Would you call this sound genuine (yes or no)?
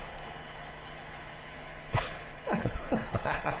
no